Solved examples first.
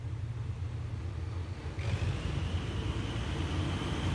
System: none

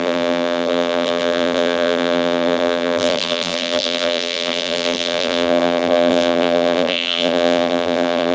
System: vocoder, BigVGAN v2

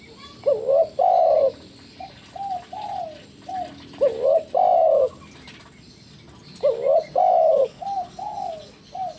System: none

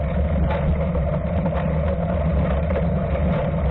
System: none